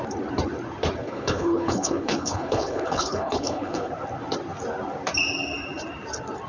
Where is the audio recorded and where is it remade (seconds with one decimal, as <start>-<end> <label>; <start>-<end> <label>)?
0.0-1.0 recorded; 1.0-3.9 remade; 3.9-6.5 recorded